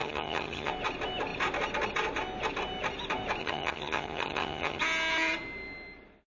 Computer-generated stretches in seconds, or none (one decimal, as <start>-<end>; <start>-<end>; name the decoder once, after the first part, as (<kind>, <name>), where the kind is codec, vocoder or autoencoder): 0.0-0.7 (vocoder, HiFi-GAN); 3.4-4.8